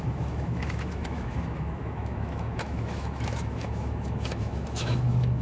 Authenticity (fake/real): fake